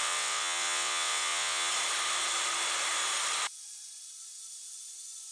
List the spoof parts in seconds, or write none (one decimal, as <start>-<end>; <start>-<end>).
0.0-1.7